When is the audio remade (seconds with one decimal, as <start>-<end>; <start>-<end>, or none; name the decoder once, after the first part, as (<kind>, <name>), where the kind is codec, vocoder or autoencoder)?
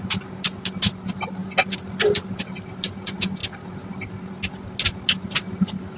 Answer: none